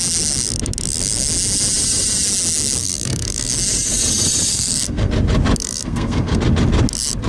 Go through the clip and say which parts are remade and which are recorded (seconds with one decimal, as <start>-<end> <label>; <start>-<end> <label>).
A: 0.0-2.8 recorded; 2.8-3.5 remade; 3.5-4.5 recorded; 4.5-5.1 remade; 5.1-5.6 recorded; 5.6-6.4 remade; 6.4-7.3 recorded